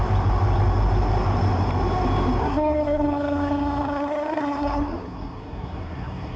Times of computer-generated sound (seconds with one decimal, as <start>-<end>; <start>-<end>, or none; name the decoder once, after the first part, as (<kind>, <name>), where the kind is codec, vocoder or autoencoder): 2.4-6.4 (codec, SNAC)